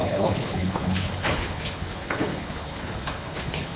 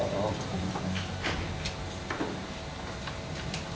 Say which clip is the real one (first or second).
second